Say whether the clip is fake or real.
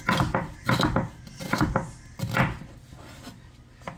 real